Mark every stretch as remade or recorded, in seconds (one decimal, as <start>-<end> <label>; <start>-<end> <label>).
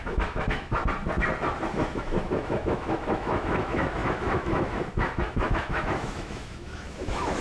0.0-0.8 remade; 0.8-1.7 recorded; 1.7-7.4 remade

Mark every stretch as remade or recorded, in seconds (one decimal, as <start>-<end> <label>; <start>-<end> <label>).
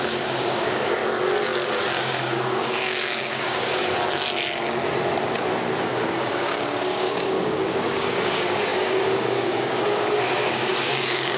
0.0-1.0 remade; 1.0-2.0 recorded; 2.0-3.8 remade; 3.8-5.9 recorded; 5.9-11.4 remade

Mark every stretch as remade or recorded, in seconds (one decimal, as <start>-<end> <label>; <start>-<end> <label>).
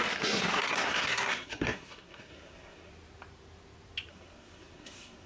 0.0-2.9 remade; 2.9-4.1 recorded; 4.1-5.3 remade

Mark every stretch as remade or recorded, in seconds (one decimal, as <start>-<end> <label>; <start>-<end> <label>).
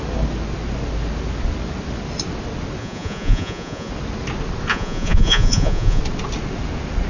0.0-2.8 recorded; 2.8-3.9 remade; 3.9-4.7 recorded; 4.7-6.0 remade; 6.0-7.1 recorded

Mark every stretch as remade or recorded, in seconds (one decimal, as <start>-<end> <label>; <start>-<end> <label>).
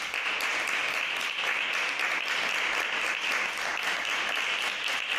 0.0-5.2 recorded